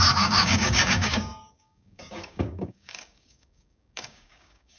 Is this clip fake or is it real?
fake